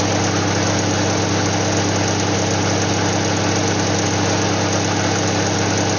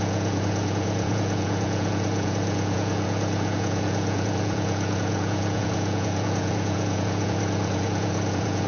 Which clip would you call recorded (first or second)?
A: first